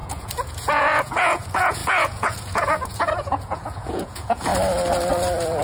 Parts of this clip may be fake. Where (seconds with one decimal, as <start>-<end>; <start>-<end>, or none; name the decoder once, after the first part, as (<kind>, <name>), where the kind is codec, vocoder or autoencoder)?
0.0-4.5 (vocoder, Vocos)